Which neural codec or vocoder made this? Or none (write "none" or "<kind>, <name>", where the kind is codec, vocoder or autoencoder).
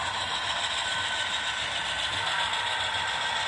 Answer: none